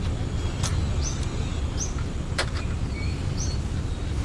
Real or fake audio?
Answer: real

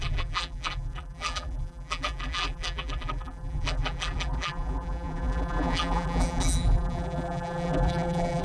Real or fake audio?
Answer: fake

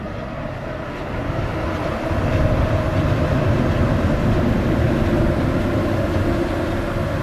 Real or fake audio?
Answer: real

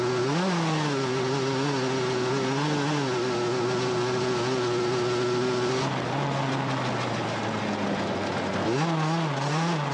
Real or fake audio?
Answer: real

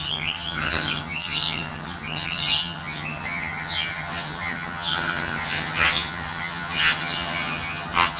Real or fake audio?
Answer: fake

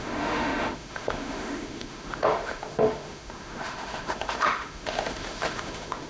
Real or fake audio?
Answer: fake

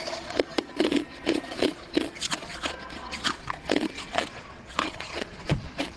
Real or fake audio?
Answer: fake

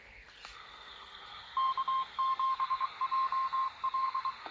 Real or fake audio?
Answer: fake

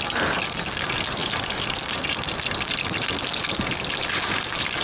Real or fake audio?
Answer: real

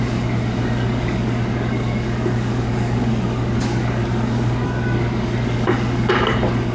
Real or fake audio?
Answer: fake